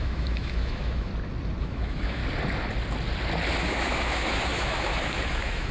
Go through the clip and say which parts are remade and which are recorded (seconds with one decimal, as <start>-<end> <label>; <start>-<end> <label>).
0.0-1.1 remade; 1.1-1.6 recorded; 1.6-2.2 remade; 2.2-3.6 recorded; 3.6-5.7 remade